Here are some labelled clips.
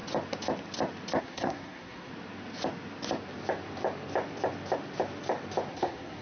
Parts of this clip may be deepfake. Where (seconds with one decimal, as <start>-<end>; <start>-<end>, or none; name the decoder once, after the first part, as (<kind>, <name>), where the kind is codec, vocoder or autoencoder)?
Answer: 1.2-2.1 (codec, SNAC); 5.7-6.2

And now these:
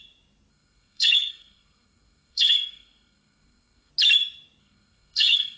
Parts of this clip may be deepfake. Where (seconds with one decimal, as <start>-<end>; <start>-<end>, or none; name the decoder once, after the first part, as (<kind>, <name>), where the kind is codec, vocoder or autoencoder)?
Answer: 0.5-3.9 (codec, SNAC); 4.6-5.6

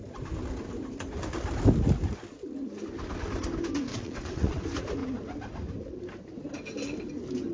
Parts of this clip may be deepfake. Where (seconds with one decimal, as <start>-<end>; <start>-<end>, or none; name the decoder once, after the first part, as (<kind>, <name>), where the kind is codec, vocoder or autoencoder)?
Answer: 3.9-4.6 (vocoder, WaveNeXt)

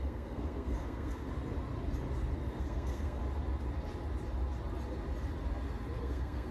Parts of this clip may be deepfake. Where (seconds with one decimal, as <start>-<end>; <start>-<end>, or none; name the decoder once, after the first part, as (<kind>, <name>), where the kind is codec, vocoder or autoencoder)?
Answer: 0.0-1.3 (codec, SNAC); 2.6-3.2; 6.0-6.5

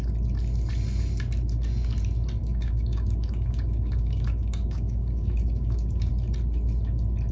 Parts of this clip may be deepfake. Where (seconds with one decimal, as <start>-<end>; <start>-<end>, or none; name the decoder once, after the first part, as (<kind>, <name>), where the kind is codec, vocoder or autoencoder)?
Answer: 2.4-6.1 (codec, DAC)